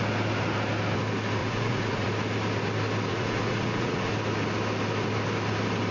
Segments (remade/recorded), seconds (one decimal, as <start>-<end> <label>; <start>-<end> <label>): 0.0-1.4 recorded; 1.4-2.1 remade; 2.1-3.1 recorded; 3.1-4.1 remade; 4.1-5.9 recorded